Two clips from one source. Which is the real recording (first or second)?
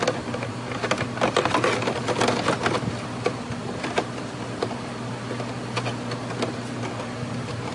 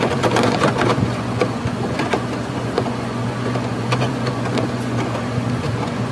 first